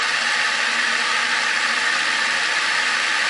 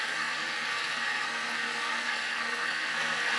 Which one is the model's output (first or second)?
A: second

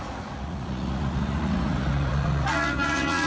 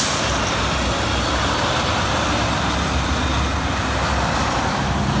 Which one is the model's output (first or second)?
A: first